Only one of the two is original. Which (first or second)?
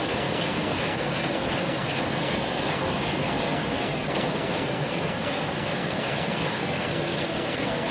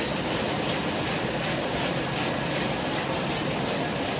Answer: second